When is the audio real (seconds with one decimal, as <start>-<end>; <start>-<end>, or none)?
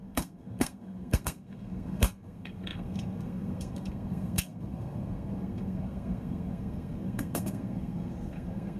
none